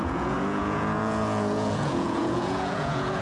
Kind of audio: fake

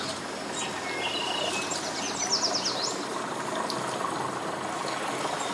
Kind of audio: real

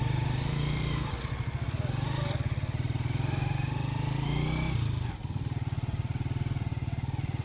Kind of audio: real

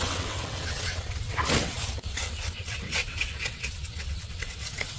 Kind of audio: fake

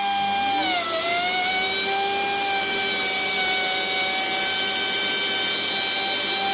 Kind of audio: real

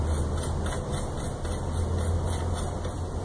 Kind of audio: real